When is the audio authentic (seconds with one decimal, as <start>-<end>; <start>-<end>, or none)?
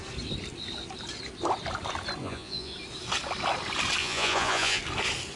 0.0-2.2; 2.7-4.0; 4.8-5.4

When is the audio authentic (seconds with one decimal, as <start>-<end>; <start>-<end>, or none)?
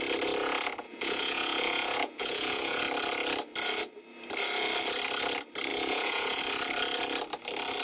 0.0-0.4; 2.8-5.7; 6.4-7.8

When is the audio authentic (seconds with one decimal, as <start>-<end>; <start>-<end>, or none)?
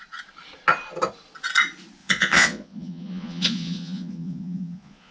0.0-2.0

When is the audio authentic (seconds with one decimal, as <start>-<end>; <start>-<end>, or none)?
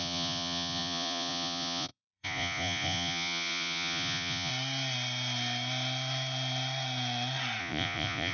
4.5-7.6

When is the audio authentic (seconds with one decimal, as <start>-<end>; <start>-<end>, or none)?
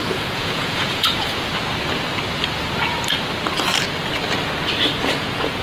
1.5-4.9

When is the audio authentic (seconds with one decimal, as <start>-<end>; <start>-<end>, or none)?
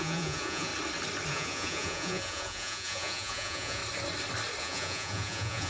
0.7-1.3; 3.8-4.6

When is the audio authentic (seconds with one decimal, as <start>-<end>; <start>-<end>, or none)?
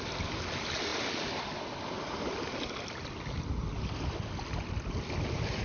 0.0-5.6